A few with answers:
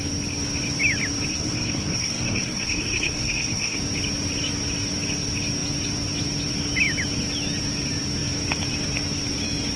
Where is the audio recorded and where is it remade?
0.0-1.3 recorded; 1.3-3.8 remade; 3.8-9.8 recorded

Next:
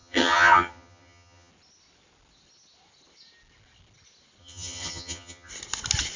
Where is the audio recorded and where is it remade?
0.0-1.5 remade; 1.5-4.4 recorded; 4.4-5.5 remade; 5.5-6.2 recorded

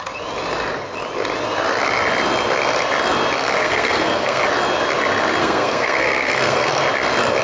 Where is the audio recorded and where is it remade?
0.0-3.6 recorded; 3.6-4.4 remade; 4.4-5.4 recorded; 5.4-6.7 remade; 6.7-7.4 recorded

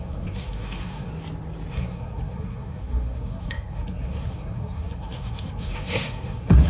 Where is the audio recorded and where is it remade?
0.0-1.1 remade; 1.1-1.7 recorded; 1.7-6.7 remade

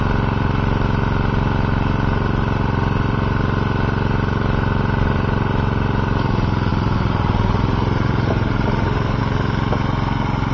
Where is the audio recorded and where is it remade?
0.0-6.7 recorded; 6.7-9.2 remade; 9.2-10.5 recorded

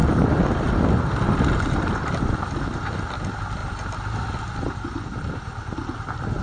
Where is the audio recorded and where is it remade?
0.0-3.6 remade; 3.6-4.7 recorded; 4.7-6.4 remade